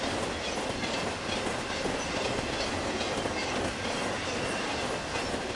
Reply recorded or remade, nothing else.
recorded